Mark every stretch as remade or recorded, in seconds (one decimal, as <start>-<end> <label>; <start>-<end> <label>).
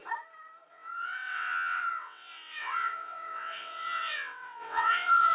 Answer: 0.0-0.7 recorded; 0.7-5.3 remade